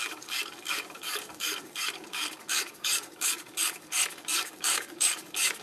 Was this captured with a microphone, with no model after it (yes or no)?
no